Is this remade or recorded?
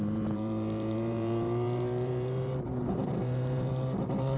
remade